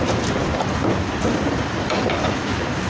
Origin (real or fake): real